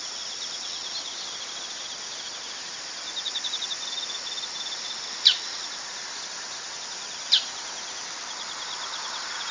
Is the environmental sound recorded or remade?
recorded